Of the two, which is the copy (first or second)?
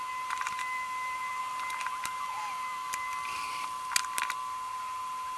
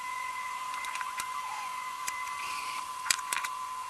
second